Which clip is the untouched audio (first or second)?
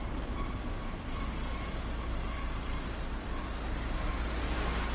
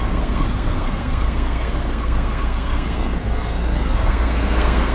first